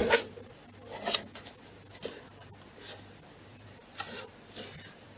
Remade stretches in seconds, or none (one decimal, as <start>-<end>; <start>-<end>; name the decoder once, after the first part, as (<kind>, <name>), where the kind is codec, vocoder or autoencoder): 3.5-4.3 (vocoder, BigVGAN v2)